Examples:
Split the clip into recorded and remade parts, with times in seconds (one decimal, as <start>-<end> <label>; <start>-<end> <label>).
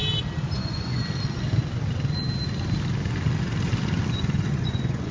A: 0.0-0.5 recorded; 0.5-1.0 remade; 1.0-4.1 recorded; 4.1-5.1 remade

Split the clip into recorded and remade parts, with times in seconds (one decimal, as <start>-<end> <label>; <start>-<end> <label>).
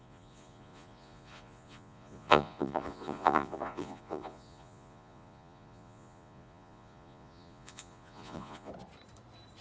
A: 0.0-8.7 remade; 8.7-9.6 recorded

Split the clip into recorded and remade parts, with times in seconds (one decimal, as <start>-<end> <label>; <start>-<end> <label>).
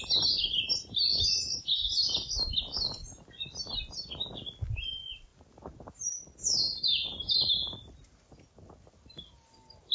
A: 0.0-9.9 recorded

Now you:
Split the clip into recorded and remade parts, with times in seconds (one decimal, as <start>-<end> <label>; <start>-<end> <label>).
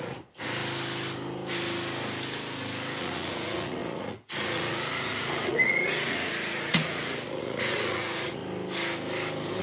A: 0.0-0.6 remade; 0.6-3.0 recorded; 3.0-8.4 remade; 8.4-9.6 recorded